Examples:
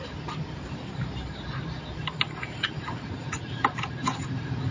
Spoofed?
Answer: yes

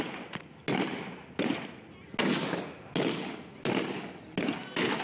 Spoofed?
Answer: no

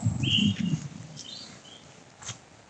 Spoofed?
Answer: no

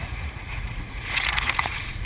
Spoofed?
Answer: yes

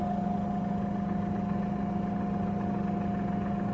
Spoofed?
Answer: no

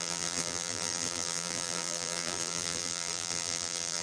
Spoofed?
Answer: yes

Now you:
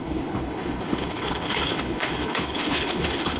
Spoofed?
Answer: yes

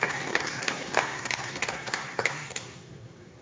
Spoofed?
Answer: yes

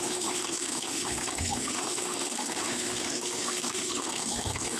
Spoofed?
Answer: yes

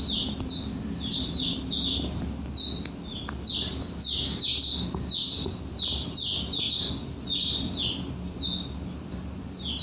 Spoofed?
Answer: no